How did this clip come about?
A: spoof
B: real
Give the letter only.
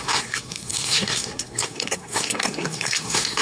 A